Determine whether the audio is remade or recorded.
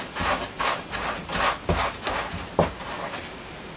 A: recorded